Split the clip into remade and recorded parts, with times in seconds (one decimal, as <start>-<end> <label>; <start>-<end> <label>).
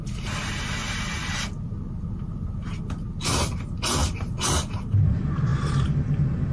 0.0-0.8 recorded; 0.8-1.7 remade; 1.7-4.0 recorded; 4.0-4.5 remade; 4.5-6.5 recorded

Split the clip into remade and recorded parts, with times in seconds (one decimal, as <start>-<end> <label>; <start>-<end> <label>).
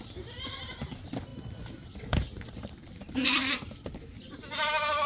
0.0-5.1 remade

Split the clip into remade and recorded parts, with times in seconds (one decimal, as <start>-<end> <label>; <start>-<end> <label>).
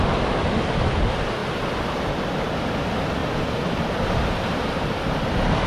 0.0-3.2 recorded; 3.2-5.7 remade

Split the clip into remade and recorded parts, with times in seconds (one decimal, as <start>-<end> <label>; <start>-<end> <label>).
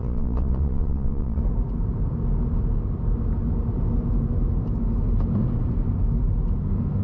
0.0-1.4 remade; 1.4-7.0 recorded